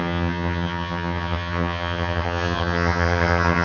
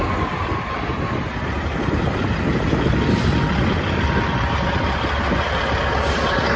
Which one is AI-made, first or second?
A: first